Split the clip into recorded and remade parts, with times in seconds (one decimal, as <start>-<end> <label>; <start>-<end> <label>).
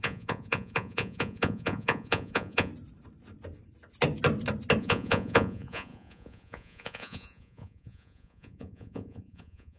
0.0-2.7 remade; 2.7-4.8 recorded; 4.8-9.8 remade